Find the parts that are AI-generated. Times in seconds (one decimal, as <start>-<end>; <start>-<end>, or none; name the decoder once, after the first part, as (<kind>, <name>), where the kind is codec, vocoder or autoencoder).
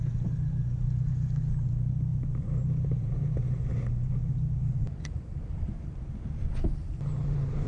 2.1-6.0 (vocoder, BigVGAN v2); 6.8-7.7